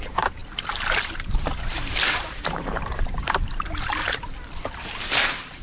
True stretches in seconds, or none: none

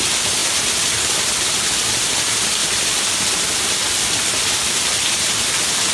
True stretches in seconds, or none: 0.0-0.4; 1.3-2.6; 3.4-5.9

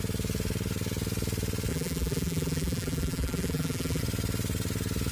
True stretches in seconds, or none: 0.0-1.7; 4.0-5.1

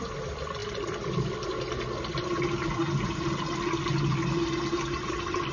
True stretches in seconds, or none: 0.0-0.6; 1.5-5.5